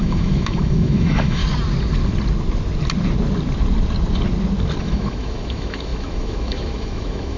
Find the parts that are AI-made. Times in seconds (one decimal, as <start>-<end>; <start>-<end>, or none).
0.0-1.4; 4.8-7.4